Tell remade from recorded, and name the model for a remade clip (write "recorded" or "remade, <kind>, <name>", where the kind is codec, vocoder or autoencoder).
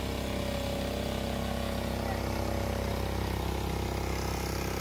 recorded